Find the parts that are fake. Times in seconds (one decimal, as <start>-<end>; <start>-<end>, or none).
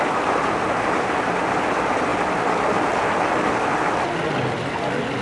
none